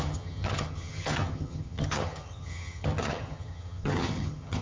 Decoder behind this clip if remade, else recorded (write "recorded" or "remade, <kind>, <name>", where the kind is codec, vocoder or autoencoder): remade, vocoder, HiFi-GAN